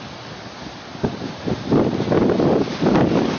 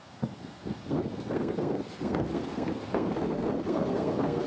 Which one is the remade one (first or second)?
second